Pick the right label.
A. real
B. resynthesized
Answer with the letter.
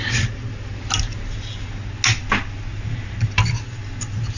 A